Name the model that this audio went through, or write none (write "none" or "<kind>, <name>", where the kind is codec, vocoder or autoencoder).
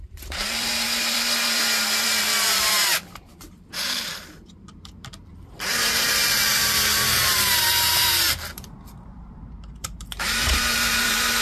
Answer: vocoder, BigVGAN v2